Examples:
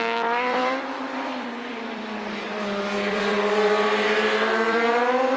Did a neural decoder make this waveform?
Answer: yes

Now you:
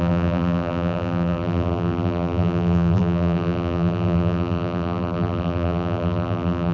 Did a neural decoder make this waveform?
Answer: yes